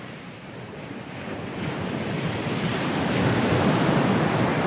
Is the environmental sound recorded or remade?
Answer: remade